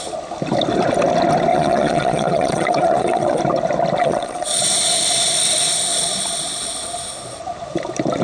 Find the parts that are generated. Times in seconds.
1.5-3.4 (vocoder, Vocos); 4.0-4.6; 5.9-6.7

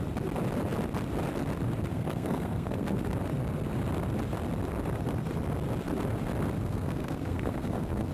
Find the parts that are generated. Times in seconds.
1.9-3.1 (codec, SNAC); 6.6-8.1

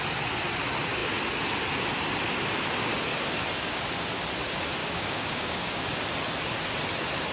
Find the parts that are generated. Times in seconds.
4.8-6.0 (codec, DAC)

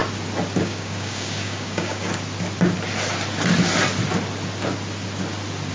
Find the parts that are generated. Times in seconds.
0.6-2.1 (codec, DAC)

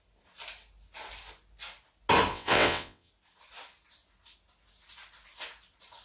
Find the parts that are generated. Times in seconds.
2.3-3.1 (vocoder, WaveNeXt)